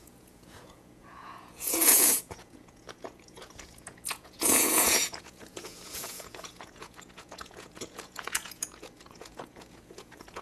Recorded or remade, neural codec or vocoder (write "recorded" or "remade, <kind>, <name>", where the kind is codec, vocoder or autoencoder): remade, vocoder, Vocos